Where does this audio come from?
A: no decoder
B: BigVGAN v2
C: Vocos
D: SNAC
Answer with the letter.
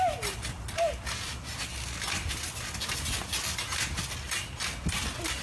A